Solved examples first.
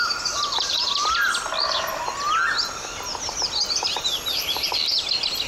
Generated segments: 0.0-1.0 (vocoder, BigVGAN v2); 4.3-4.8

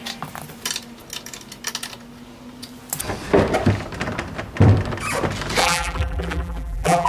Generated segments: 5.6-7.1 (vocoder, BigVGAN v2)

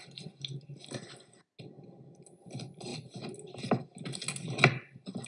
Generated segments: none

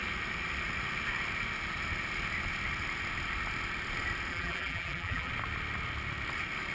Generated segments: 4.3-5.3 (vocoder, BigVGAN v2)

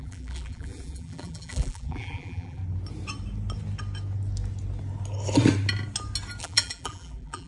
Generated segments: 0.0-2.6 (vocoder, BigVGAN v2); 6.4-7.5

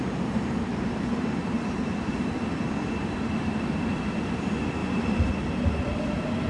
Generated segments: 0.7-2.1 (vocoder, BigVGAN v2); 4.8-5.3

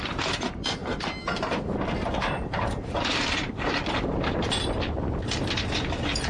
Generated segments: 0.0-6.3 (vocoder, BigVGAN v2)